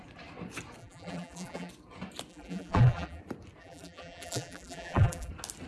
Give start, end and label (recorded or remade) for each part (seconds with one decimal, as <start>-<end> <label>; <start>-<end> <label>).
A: 0.0-0.8 recorded; 0.8-1.7 remade; 1.7-2.3 recorded; 2.3-3.2 remade; 3.2-3.6 recorded; 3.6-5.3 remade; 5.3-5.7 recorded